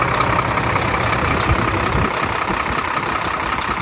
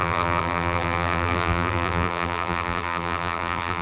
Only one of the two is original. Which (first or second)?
first